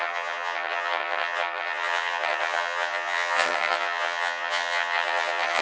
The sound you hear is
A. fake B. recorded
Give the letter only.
A